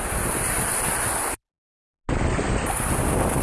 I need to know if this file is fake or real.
real